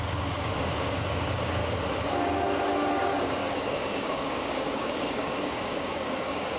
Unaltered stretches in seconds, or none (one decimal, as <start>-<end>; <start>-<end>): 1.6-2.9